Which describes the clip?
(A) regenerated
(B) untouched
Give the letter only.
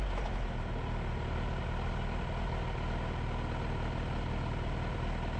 B